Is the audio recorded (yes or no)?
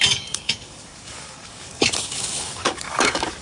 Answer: no